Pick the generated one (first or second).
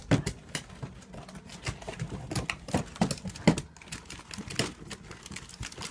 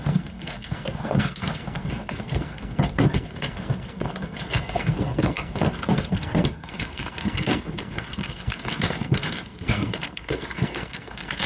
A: second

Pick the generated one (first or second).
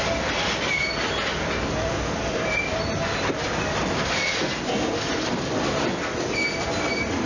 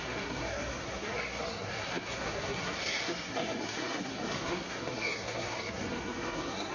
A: second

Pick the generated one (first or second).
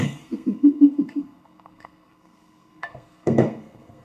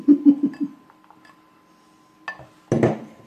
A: first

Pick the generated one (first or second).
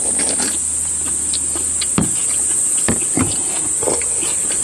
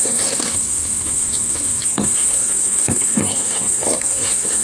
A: second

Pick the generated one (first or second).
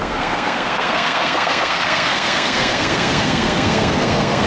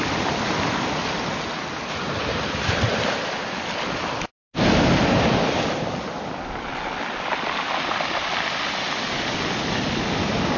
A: first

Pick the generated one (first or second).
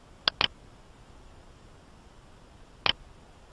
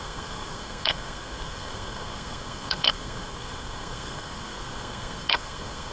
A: second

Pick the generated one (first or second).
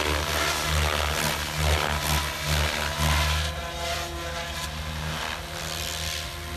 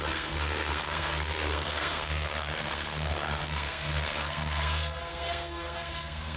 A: second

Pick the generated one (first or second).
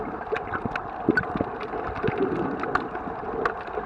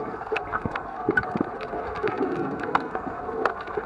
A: second